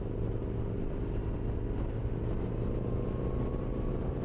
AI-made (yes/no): no